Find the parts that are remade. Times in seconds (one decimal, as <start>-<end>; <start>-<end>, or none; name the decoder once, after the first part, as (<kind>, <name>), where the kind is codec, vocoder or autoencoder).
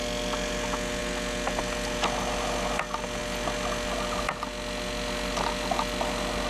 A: none